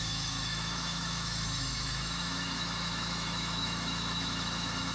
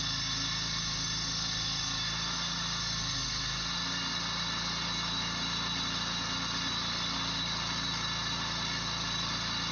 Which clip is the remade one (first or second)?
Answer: first